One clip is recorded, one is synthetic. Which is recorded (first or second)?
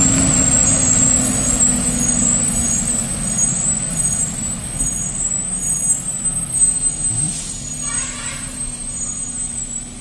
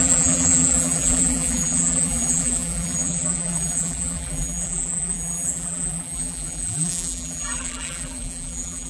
first